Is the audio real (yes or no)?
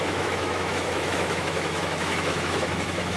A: no